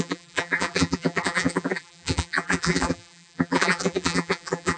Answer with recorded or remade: remade